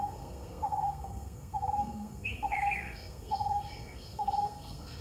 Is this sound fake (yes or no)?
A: yes